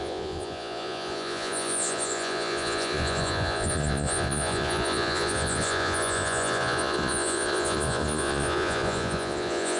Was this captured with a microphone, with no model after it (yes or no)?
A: no